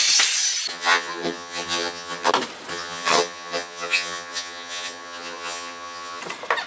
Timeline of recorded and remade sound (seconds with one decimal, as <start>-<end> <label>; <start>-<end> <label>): 0.0-0.7 recorded; 0.7-2.3 remade; 2.3-2.7 recorded; 2.7-6.2 remade; 6.2-6.7 recorded